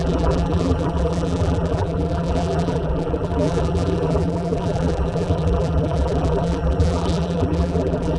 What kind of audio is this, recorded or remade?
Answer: remade